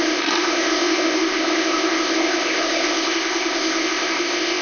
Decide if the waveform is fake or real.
fake